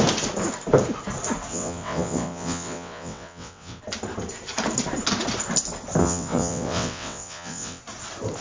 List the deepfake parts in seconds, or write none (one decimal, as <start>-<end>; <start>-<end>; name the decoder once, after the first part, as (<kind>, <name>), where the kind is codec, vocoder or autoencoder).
1.5-3.8 (vocoder, WaveNeXt); 6.0-7.8